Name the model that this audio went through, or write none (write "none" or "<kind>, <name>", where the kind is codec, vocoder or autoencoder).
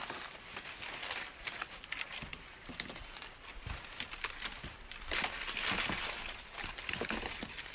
none